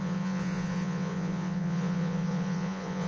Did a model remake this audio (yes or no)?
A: yes